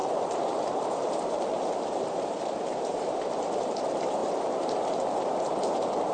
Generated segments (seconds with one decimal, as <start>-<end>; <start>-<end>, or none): 0.0-3.2; 4.2-5.2

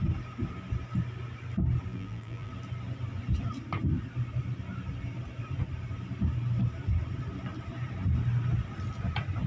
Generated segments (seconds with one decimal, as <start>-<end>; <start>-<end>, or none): 1.9-2.5

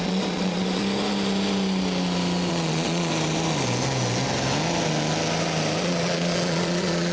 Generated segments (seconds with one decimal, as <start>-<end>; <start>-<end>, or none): 0.0-0.8; 2.5-3.1; 5.8-7.1

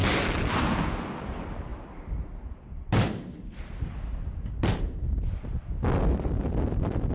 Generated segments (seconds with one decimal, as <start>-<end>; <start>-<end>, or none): none

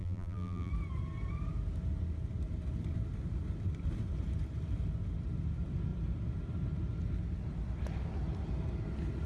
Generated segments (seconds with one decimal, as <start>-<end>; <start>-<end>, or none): 0.0-0.7

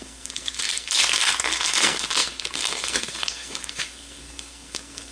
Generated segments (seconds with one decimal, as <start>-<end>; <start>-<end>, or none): 0.0-5.1

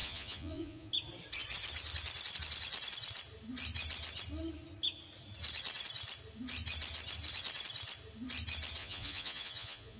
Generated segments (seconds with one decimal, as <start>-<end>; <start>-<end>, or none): 0.0-0.9; 8.8-10.0